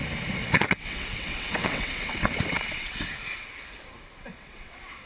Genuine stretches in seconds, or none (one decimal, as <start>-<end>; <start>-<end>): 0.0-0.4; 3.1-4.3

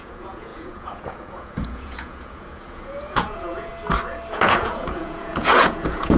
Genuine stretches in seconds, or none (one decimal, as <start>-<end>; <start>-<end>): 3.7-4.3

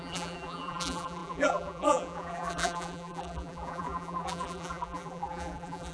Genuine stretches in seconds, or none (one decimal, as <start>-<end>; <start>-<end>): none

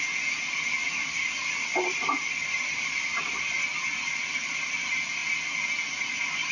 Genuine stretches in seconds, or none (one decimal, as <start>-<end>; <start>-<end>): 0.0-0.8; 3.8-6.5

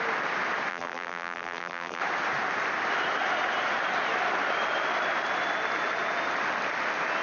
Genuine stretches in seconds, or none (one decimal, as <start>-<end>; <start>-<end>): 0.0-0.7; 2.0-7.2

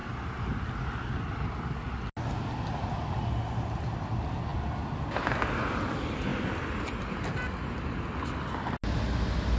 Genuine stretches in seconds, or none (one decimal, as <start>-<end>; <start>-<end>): 0.0-9.6

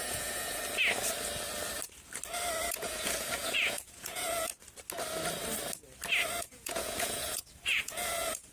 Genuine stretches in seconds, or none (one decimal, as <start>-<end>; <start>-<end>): 0.6-2.7; 4.5-6.4

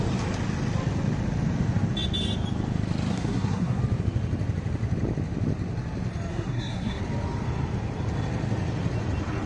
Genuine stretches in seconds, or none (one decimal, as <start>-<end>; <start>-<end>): 0.0-3.1; 3.8-6.3; 7.0-9.5